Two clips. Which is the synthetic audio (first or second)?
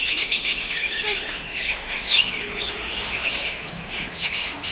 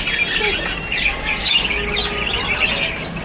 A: first